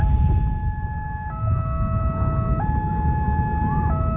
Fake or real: real